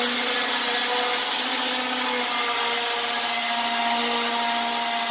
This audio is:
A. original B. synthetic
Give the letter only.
A